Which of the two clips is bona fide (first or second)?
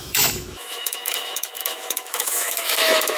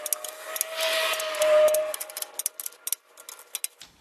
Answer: second